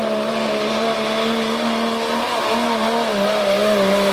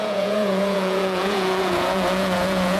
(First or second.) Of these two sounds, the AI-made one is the second